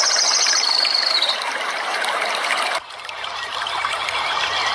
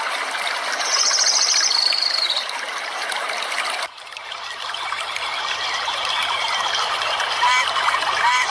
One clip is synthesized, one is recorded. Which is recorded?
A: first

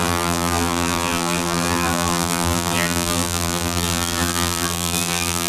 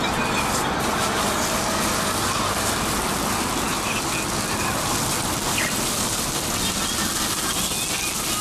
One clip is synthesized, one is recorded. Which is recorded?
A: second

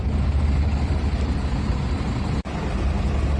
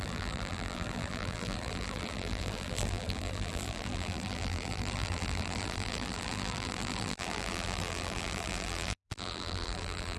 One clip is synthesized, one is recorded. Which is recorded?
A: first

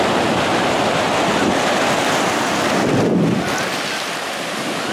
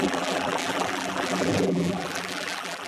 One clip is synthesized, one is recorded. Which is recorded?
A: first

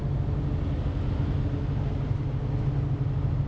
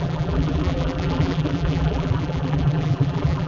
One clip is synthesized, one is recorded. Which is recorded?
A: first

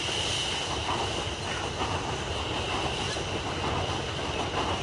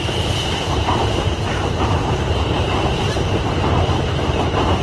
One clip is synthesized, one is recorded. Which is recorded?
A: first